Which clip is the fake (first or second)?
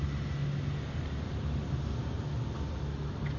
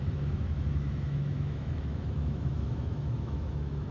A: second